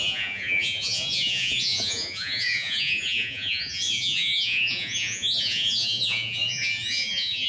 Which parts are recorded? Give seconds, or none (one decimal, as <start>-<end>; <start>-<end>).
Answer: none

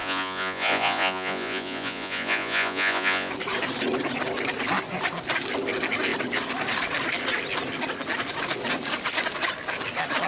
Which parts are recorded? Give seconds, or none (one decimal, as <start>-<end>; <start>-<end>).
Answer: 3.3-10.3

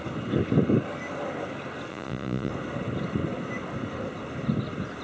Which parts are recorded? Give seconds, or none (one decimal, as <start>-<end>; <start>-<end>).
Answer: 0.0-1.9; 2.5-5.0

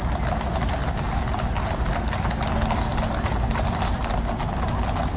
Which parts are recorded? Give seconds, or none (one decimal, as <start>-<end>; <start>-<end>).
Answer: 0.0-5.2

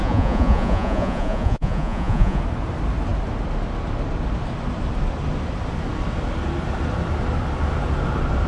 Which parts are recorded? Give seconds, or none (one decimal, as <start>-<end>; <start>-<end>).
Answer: 2.4-8.5

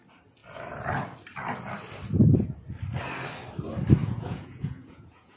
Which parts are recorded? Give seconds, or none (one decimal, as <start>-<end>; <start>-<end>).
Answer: 0.0-4.0